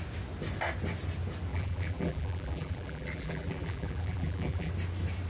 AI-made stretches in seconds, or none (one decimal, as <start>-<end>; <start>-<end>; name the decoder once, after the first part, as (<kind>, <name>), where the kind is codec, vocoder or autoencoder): 1.5-4.7 (vocoder, BigVGAN v2)